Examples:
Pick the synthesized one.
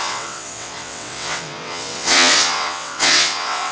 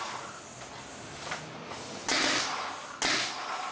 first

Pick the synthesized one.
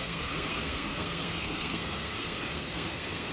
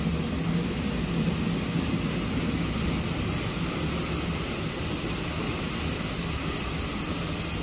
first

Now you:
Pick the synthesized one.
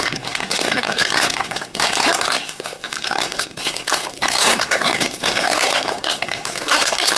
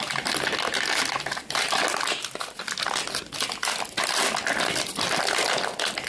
first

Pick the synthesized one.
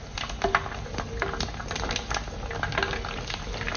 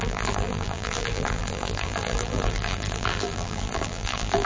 second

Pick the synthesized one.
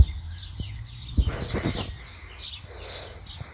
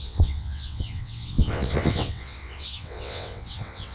second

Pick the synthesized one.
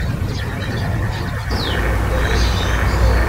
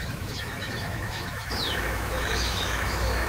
second